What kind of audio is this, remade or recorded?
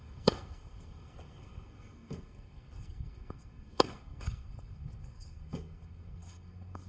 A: remade